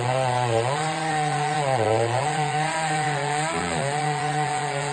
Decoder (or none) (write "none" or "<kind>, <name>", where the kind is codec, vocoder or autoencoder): vocoder, Vocos